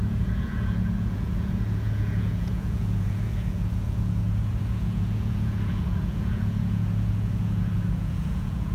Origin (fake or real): fake